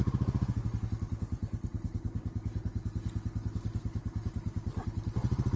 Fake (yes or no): no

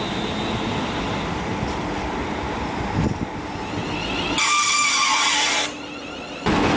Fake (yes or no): no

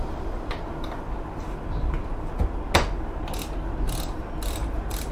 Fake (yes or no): no